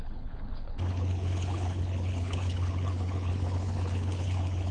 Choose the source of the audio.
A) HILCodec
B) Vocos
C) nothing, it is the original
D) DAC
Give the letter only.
A